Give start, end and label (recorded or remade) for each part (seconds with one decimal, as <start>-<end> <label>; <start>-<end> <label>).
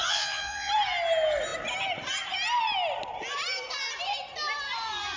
0.0-0.7 remade; 0.7-5.2 recorded